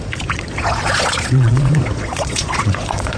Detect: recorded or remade remade